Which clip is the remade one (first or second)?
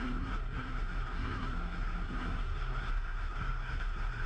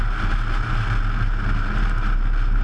first